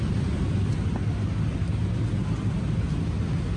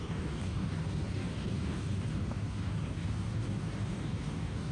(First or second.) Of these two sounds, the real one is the first